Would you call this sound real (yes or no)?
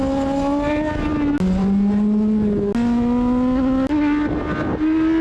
yes